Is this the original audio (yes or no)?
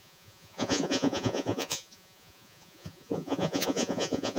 no